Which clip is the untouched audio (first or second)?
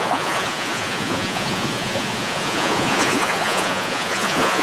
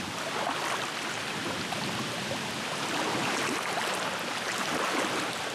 second